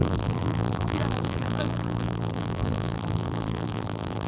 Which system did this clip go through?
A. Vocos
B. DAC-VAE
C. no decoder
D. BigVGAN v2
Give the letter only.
D